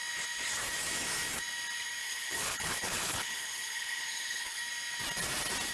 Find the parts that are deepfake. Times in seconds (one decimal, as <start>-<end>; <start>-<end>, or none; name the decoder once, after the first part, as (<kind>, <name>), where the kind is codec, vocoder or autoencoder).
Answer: 2.0-4.6 (codec, HILCodec)